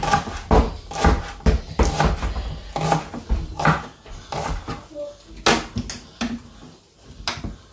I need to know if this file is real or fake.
real